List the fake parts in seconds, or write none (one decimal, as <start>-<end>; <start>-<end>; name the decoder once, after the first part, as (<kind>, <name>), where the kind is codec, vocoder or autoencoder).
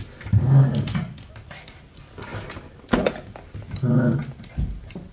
0.4-1.3 (codec, DAC)